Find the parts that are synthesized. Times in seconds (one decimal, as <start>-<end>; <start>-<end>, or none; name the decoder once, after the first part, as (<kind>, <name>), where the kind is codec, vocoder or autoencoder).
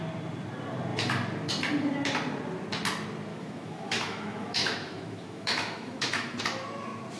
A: 3.3-6.4 (autoencoder, DAC-VAE)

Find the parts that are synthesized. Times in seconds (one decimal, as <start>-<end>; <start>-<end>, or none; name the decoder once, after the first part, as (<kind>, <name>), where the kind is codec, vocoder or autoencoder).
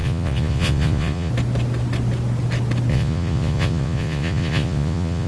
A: 0.0-1.3 (vocoder, Vocos); 2.9-5.3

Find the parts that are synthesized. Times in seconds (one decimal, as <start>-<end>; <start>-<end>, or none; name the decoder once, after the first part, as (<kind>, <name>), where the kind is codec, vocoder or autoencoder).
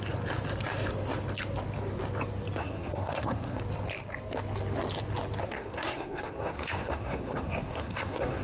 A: 2.6-3.6 (codec, SNAC); 5.4-8.4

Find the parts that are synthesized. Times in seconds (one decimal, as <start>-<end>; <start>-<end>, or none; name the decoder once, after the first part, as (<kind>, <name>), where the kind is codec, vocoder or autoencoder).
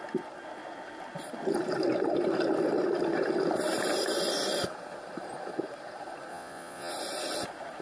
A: 6.3-6.9 (vocoder, Vocos)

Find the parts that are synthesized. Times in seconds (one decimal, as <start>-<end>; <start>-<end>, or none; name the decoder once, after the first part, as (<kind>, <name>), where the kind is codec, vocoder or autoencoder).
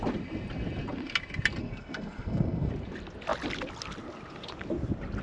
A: 1.6-2.7 (codec, SNAC)